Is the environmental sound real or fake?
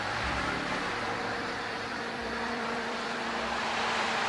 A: fake